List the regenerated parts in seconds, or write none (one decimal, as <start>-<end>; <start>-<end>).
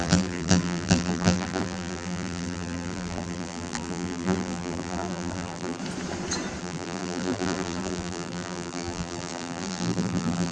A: 0.0-5.8; 6.6-10.5